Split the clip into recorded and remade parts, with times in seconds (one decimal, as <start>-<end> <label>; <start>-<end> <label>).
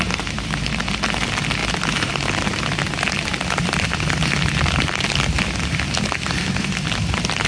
0.0-7.5 recorded